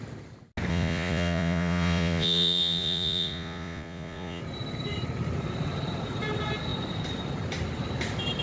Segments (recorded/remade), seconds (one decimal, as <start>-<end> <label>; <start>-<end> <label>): 0.0-0.7 recorded; 0.7-4.4 remade; 4.4-8.4 recorded